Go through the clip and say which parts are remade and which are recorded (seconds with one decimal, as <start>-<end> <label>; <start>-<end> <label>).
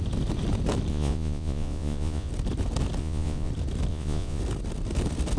0.0-0.9 recorded; 0.9-2.3 remade; 2.3-3.0 recorded; 3.0-3.5 remade; 3.5-3.9 recorded; 3.9-4.4 remade; 4.4-5.4 recorded